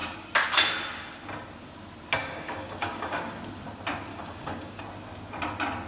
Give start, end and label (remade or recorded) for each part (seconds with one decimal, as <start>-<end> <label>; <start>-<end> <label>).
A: 0.0-2.2 recorded; 2.2-3.4 remade; 3.4-4.1 recorded; 4.1-4.8 remade; 4.8-5.9 recorded